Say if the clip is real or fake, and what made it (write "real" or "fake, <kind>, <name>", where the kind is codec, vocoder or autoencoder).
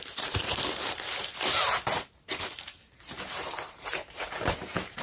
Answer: fake, vocoder, BigVGAN v2